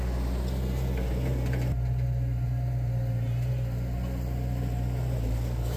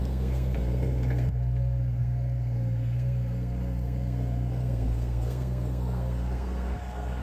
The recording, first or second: first